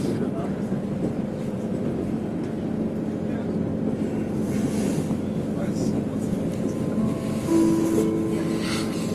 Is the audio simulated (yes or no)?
no